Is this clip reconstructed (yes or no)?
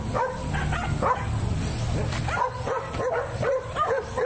no